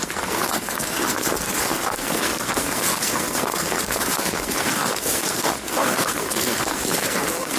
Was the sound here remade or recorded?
remade